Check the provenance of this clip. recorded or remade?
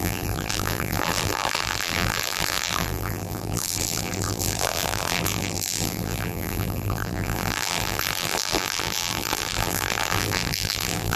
remade